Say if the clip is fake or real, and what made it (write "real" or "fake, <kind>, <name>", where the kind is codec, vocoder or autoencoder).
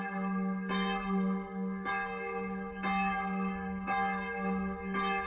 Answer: fake, codec, DAC